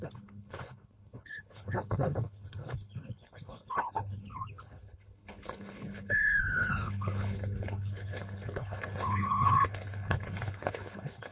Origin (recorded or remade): remade